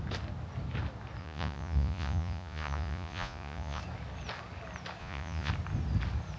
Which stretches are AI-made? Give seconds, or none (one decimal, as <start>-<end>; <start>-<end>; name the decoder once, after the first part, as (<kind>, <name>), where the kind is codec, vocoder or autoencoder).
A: 1.2-3.8 (vocoder, Vocos); 5.0-5.5